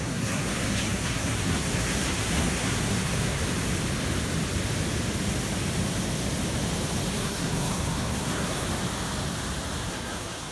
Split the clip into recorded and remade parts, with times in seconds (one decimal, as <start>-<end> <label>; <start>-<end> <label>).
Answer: 0.0-3.4 remade; 3.4-7.1 recorded; 7.1-8.7 remade; 8.7-9.9 recorded; 9.9-10.5 remade